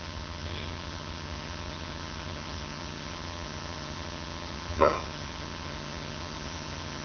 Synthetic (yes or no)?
yes